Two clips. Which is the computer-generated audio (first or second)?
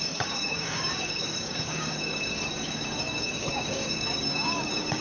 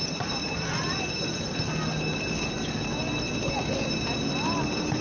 first